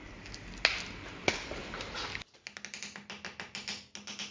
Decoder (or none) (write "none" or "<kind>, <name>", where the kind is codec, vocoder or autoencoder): none